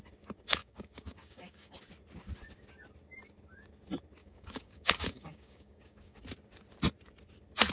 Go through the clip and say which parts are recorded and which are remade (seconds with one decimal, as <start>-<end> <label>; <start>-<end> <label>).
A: 0.0-0.6 recorded; 0.6-1.8 remade; 1.8-4.2 recorded; 4.2-6.2 remade; 6.2-7.7 recorded